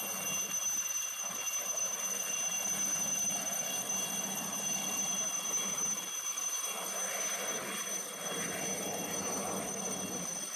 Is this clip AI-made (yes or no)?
no